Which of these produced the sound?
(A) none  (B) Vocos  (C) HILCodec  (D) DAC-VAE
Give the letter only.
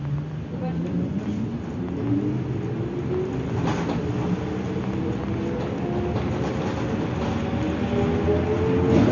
A